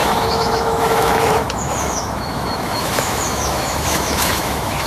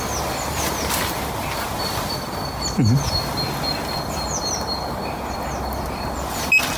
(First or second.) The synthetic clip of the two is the first